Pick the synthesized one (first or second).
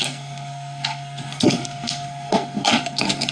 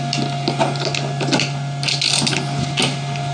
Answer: first